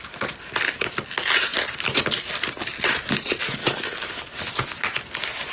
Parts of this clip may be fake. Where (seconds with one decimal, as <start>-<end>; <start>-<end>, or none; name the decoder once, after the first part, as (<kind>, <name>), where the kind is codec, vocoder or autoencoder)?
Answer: 3.6-4.4 (autoencoder, DAC-VAE)